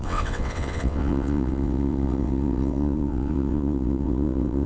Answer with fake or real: fake